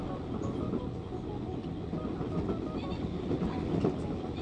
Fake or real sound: real